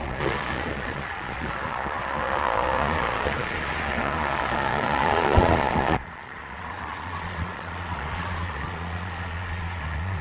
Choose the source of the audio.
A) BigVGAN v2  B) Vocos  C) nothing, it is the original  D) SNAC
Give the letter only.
B